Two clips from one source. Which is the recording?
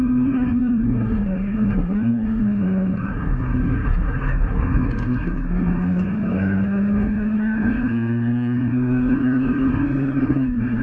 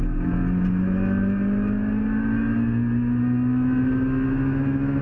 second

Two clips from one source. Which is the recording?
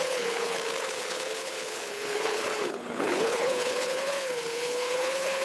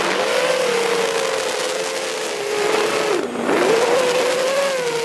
second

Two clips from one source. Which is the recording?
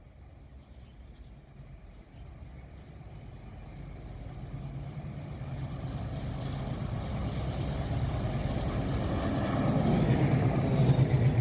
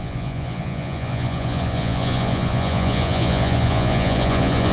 first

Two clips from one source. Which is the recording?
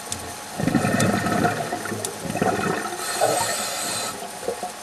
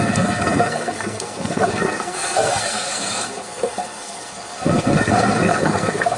first